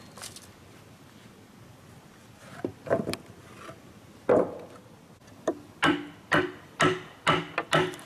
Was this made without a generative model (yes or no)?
yes